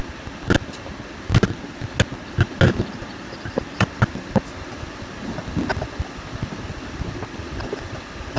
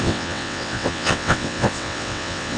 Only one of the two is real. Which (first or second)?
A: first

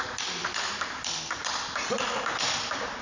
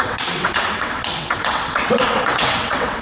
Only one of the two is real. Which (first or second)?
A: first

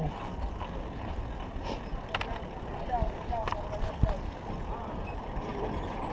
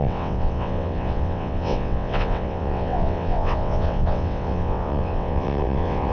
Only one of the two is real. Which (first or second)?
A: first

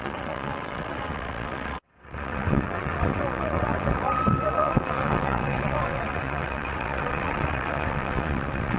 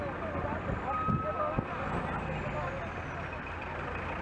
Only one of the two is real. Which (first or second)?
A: second